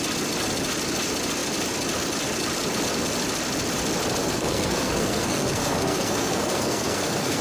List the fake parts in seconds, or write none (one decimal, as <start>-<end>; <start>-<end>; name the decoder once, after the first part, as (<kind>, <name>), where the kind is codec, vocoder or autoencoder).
4.2-7.4 (codec, SNAC)